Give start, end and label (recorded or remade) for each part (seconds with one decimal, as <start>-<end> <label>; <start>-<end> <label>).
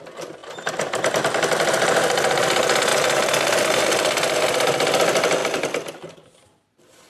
0.0-7.1 recorded